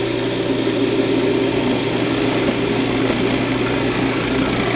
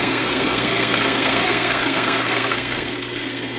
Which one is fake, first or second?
second